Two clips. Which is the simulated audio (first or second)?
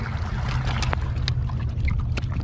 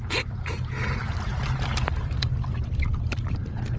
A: second